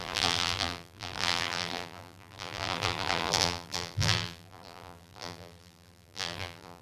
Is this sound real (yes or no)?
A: no